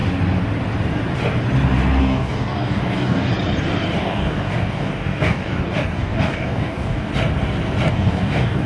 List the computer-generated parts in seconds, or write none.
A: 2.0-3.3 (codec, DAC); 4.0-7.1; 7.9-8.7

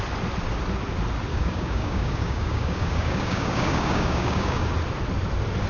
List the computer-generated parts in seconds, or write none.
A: 1.3-4.7 (codec, DAC)